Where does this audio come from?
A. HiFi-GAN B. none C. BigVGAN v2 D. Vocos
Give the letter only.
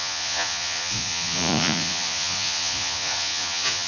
D